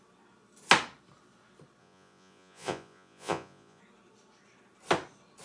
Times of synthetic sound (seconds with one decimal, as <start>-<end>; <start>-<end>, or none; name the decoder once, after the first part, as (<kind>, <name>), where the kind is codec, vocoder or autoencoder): 1.8-3.8 (vocoder, Vocos)